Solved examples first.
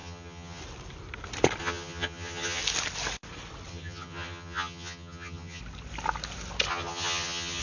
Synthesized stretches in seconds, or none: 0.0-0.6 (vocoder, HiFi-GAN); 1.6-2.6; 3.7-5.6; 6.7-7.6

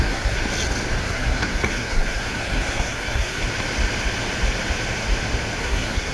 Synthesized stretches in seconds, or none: 0.0-0.4 (codec, SNAC); 1.0-3.4; 5.6-6.1